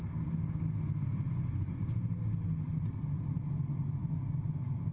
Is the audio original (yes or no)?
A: yes